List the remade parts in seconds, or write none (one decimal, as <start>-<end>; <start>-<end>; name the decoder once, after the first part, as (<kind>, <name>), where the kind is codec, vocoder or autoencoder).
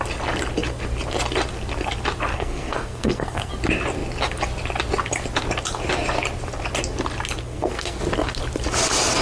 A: 2.3-3.5 (codec, SNAC); 7.4-8.0